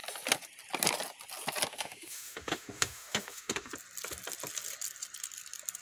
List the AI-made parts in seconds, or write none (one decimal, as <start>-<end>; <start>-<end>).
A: 1.7-3.7